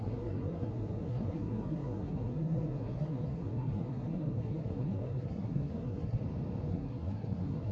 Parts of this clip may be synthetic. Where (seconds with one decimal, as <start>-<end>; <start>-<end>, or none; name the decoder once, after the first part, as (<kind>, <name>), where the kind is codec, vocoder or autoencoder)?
0.0-6.2 (codec, SNAC); 6.7-7.7